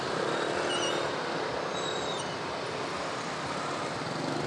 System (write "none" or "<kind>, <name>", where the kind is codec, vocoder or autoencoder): none